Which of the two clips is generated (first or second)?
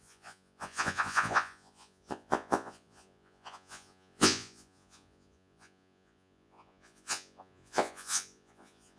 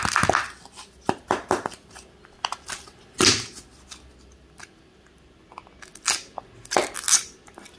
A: first